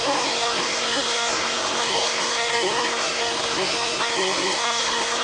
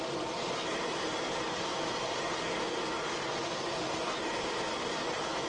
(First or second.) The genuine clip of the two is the second